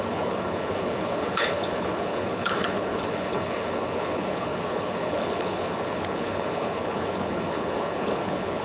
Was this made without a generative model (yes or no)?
no